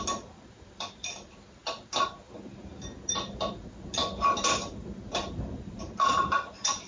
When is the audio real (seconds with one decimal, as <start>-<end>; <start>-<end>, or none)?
0.0-6.9